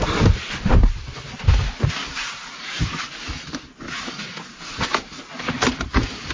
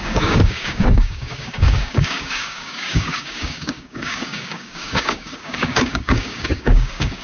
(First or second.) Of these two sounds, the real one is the first